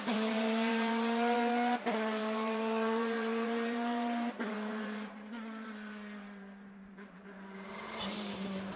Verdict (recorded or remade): remade